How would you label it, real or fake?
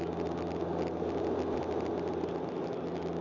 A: real